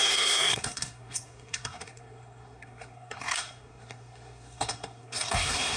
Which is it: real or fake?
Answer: fake